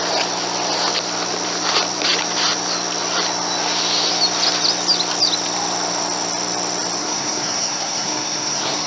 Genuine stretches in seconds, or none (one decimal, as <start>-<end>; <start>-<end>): 0.0-7.0